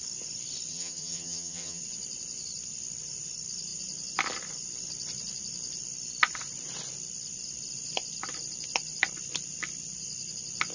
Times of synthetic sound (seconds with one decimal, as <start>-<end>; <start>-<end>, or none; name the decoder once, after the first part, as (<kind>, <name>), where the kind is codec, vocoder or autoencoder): 0.7-1.8 (vocoder, HiFi-GAN)